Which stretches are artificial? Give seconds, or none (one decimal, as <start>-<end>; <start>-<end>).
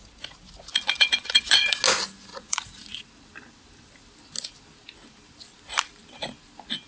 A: 0.7-1.8; 2.3-3.0